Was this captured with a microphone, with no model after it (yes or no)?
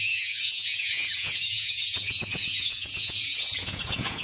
no